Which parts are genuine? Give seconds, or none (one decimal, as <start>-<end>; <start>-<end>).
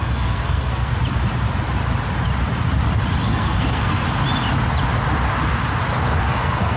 0.9-3.2; 4.0-6.2